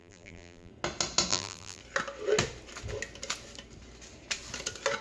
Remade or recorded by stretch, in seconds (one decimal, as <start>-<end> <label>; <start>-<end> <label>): 0.0-0.7 remade; 0.7-1.3 recorded; 1.3-1.8 remade; 1.8-5.0 recorded